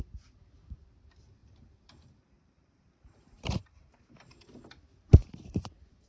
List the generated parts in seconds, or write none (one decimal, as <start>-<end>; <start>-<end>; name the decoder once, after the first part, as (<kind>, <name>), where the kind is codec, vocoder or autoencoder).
1.4-4.0 (vocoder, BigVGAN v2); 5.2-6.1